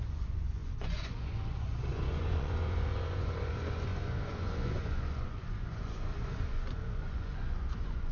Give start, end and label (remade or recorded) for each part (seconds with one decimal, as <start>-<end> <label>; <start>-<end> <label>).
0.0-8.1 remade

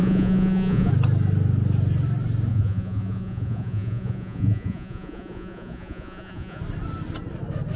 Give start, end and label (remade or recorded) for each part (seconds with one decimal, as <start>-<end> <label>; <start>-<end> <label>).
0.0-0.9 remade; 0.9-2.5 recorded; 2.5-6.6 remade; 6.6-7.8 recorded

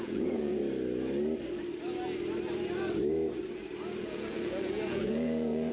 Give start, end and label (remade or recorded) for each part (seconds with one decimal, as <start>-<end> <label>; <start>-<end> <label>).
0.0-0.6 remade; 0.6-4.0 recorded; 4.0-5.7 remade